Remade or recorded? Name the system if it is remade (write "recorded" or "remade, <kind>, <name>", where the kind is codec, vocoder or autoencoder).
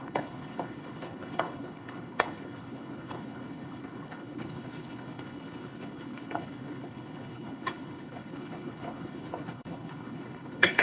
remade, codec, HILCodec